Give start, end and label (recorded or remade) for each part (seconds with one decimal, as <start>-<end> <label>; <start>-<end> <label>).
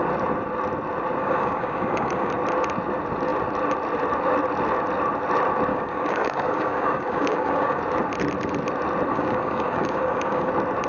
0.0-1.2 recorded; 1.2-2.3 remade; 2.3-5.7 recorded; 5.7-7.8 remade; 7.8-9.1 recorded; 9.1-10.5 remade; 10.5-10.9 recorded